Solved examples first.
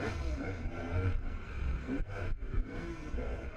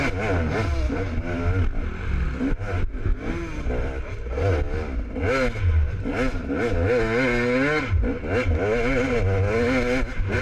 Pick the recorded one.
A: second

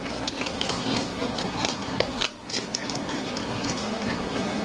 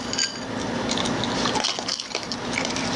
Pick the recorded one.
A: second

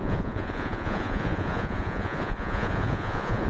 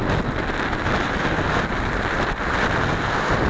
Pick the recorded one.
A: second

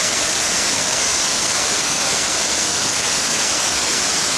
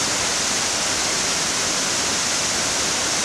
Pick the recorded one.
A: second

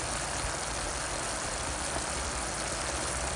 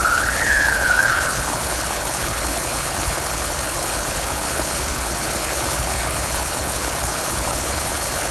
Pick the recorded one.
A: first